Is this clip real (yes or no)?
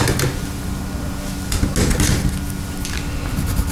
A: yes